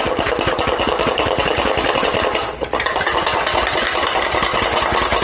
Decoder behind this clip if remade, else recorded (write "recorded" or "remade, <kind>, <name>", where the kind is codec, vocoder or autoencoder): recorded